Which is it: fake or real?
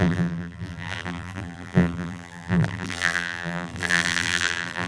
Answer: fake